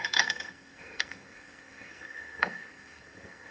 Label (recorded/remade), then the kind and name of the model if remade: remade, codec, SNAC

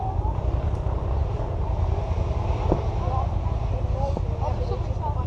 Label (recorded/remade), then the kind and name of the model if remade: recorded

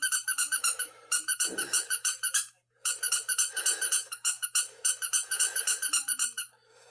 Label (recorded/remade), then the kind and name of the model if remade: remade, autoencoder, DAC-VAE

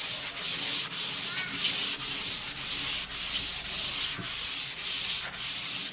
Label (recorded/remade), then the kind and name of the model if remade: recorded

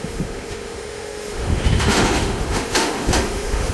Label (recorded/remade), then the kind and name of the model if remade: remade, autoencoder, DAC-VAE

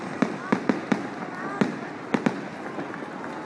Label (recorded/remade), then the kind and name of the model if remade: recorded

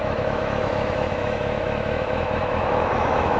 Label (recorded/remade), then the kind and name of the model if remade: remade, autoencoder, DAC-VAE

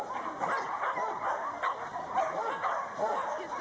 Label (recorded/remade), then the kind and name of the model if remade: recorded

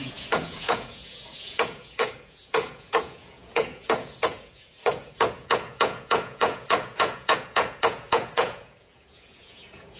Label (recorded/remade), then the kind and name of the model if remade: remade, vocoder, Vocos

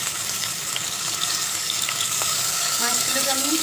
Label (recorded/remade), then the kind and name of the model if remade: remade, codec, DAC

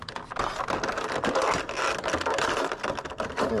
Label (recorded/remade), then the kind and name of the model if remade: recorded